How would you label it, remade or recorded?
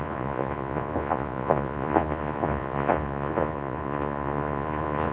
remade